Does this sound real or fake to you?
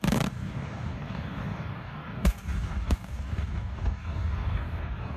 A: fake